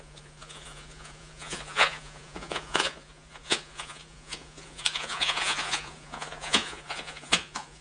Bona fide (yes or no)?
no